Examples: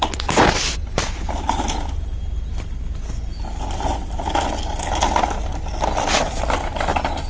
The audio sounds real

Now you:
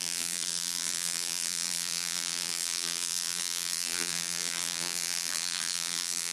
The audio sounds fake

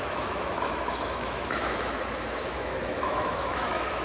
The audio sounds fake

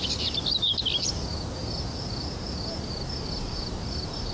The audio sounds real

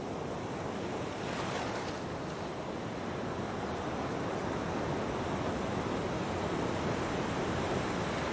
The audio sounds real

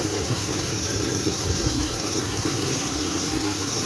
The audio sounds fake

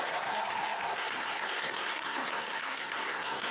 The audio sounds fake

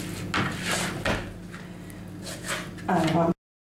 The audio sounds real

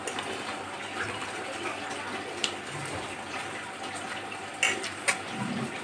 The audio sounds real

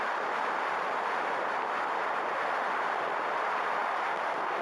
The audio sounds real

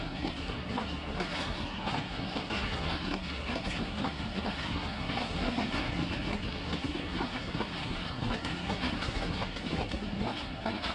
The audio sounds fake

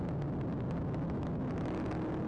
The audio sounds real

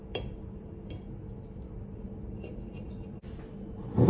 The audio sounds real